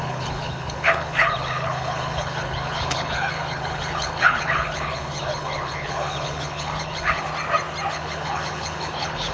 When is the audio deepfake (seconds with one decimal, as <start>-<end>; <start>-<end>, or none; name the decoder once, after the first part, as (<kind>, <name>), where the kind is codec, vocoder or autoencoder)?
0.0-7.3 (codec, HILCodec); 7.9-9.3